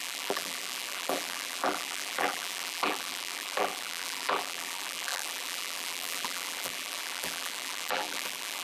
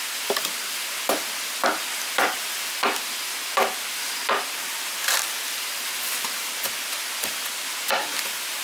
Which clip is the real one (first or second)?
second